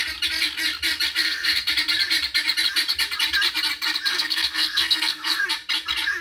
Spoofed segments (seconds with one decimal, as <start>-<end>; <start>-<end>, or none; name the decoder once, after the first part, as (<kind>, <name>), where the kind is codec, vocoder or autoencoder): 1.2-1.7 (codec, SNAC); 4.1-5.5